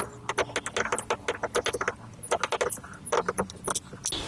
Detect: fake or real real